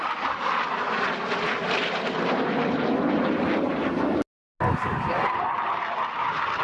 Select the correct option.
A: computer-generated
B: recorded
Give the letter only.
B